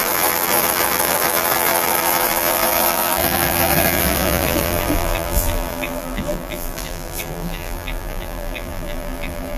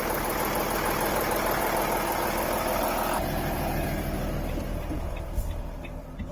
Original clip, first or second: second